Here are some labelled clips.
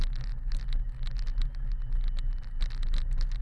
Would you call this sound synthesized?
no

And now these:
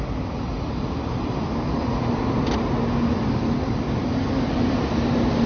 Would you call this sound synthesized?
no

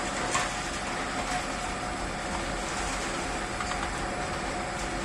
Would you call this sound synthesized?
no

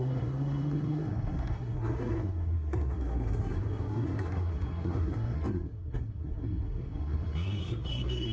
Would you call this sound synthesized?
yes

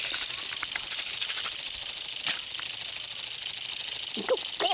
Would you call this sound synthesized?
no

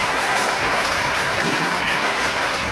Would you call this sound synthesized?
yes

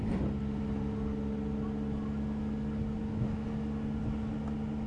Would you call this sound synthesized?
no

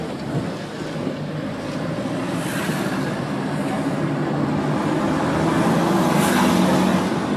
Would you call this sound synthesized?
no